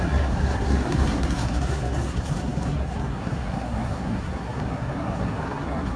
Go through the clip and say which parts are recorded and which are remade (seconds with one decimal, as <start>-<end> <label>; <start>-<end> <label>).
0.0-6.0 remade

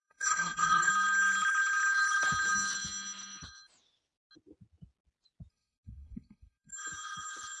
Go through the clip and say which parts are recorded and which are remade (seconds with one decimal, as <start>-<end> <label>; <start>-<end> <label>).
0.0-0.9 remade; 0.9-5.5 recorded; 5.5-6.7 remade; 6.7-7.6 recorded

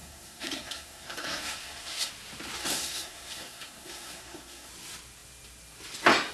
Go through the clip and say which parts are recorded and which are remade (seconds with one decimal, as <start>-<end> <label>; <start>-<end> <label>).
0.0-2.1 remade; 2.1-2.6 recorded; 2.6-4.7 remade; 4.7-6.3 recorded

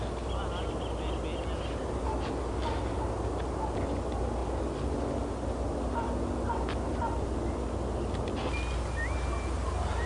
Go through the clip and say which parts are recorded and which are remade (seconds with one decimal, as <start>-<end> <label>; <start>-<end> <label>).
0.0-10.1 recorded

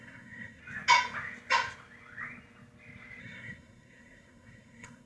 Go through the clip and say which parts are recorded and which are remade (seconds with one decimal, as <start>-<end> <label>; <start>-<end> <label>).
0.0-0.6 remade; 0.6-3.2 recorded; 3.2-5.1 remade